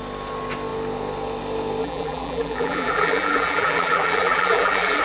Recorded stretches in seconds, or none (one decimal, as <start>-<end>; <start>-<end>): 0.0-1.8